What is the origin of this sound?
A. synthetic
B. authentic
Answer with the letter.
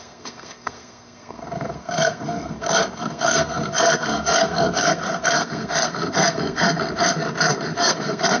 A